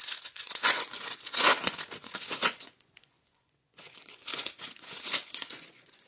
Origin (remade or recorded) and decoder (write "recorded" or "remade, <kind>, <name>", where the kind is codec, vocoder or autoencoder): remade, vocoder, Vocos